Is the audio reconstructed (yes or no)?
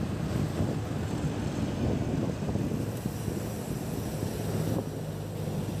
no